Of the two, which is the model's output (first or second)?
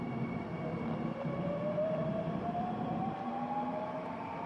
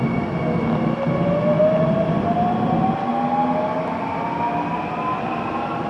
first